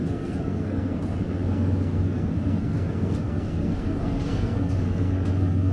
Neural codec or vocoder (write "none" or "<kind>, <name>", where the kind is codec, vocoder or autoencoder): codec, SNAC